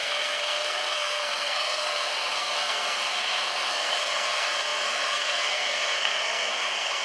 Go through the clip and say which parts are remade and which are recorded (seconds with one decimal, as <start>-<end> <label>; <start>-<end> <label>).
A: 0.0-7.0 remade